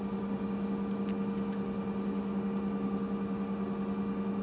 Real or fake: real